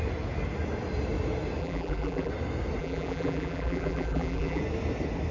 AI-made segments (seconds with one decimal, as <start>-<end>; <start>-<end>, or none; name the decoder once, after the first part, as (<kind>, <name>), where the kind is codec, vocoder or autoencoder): 1.6-2.3 (vocoder, BigVGAN v2); 2.8-4.6

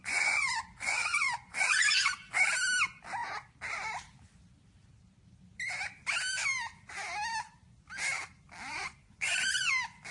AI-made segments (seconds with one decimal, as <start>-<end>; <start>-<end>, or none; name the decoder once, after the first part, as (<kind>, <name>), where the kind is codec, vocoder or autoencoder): 0.0-2.4 (vocoder, Vocos); 8.7-9.7

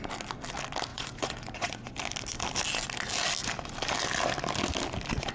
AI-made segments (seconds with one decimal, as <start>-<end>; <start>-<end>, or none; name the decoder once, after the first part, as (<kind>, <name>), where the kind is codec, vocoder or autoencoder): 0.9-1.9 (vocoder, Vocos)

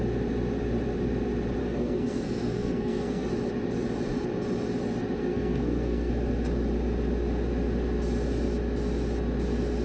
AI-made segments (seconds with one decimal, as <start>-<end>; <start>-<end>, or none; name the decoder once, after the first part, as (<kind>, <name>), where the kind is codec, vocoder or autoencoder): 1.6-3.3 (codec, SNAC); 5.2-6.1